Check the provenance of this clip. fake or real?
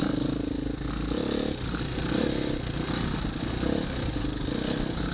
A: real